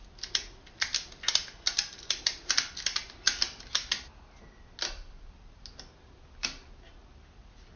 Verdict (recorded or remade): recorded